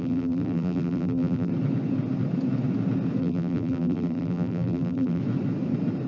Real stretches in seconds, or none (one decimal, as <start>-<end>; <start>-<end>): 1.5-3.2; 5.2-6.1